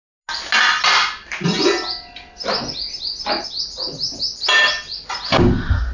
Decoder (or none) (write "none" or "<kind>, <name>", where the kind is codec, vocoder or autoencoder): none